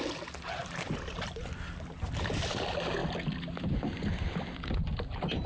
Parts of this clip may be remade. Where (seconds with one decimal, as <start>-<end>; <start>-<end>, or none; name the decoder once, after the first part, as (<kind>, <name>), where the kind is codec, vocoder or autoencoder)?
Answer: none